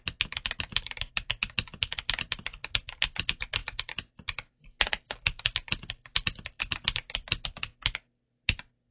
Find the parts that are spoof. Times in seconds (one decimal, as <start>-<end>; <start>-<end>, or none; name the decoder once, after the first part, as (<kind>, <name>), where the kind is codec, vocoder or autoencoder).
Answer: none

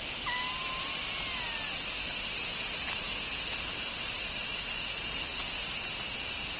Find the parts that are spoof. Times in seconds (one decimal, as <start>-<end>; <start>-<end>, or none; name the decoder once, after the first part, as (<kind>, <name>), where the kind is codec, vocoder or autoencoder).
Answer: 2.4-3.4 (vocoder, Vocos); 5.3-5.9

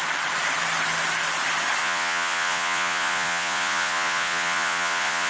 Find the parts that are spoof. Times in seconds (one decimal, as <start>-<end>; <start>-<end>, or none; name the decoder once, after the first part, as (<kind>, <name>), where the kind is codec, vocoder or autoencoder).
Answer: 1.8-5.3 (vocoder, Vocos)

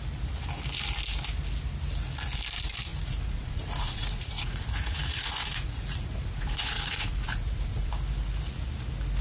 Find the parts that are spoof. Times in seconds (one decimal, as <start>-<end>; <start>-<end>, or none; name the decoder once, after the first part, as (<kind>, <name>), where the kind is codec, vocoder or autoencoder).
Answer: 2.9-7.9 (vocoder, Vocos)